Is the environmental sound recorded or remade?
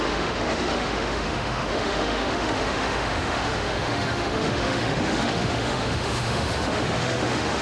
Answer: remade